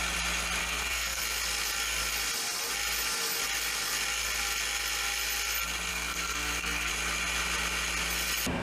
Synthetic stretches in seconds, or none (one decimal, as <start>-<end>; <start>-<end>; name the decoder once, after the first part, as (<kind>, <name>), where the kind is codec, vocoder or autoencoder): 0.6-1.2 (codec, SNAC); 5.9-6.9

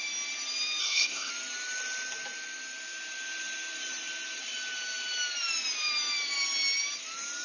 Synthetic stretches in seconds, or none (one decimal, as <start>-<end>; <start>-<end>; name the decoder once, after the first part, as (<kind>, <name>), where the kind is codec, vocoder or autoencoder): 0.8-1.3 (codec, SNAC)